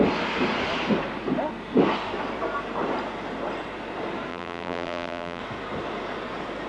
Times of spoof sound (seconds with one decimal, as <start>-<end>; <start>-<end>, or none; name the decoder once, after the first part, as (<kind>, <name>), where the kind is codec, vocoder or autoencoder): 4.3-5.4 (vocoder, BigVGAN v2)